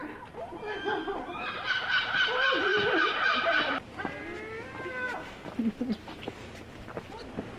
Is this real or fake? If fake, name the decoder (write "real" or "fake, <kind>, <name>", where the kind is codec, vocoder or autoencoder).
real